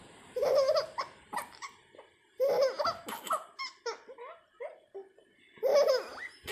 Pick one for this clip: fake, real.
real